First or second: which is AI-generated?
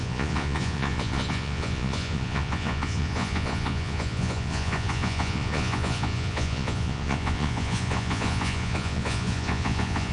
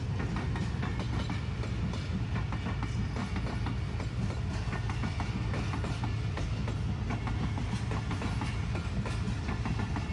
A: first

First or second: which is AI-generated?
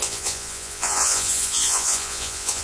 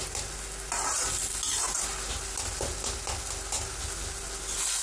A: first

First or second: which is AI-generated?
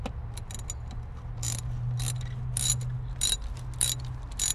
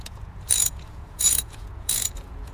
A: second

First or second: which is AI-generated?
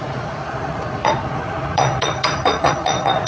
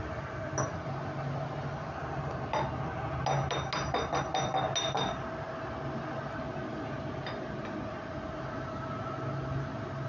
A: first